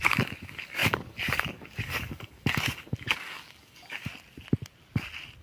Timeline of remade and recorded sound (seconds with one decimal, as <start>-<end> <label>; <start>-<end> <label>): 0.0-4.1 remade; 4.1-5.4 recorded